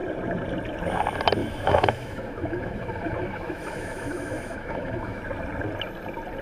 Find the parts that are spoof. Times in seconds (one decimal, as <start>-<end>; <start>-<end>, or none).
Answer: 1.4-5.2